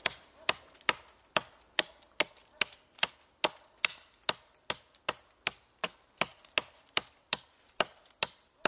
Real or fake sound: real